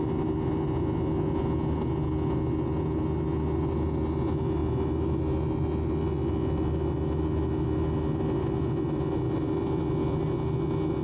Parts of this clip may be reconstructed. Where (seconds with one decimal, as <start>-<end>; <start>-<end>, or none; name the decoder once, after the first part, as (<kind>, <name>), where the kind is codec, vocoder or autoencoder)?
none